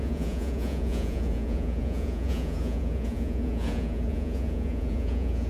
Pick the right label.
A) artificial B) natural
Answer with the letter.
A